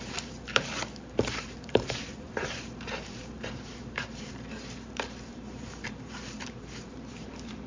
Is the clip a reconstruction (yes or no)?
yes